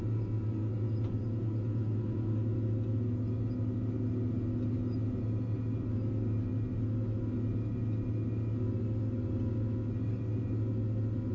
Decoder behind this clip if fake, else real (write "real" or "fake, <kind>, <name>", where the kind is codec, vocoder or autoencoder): real